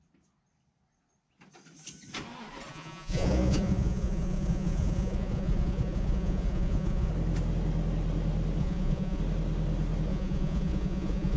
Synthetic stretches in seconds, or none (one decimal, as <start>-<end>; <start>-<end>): 2.7-7.1; 8.6-9.2; 10.1-11.4